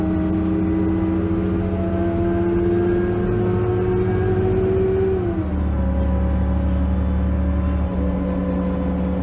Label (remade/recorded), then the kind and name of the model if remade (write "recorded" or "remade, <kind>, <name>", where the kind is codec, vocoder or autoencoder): recorded